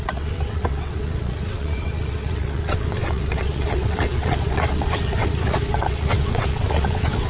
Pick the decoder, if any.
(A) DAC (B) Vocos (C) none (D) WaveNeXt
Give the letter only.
D